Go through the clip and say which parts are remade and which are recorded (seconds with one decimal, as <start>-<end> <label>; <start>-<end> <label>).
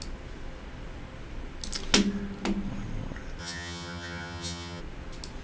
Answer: 0.0-3.4 recorded; 3.4-4.8 remade; 4.8-5.4 recorded